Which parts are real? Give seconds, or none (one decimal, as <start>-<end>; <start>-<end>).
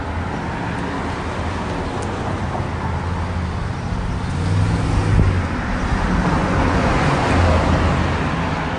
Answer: 0.0-6.4; 7.2-8.8